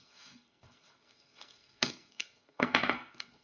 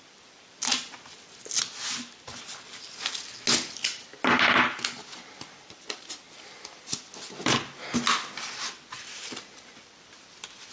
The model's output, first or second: first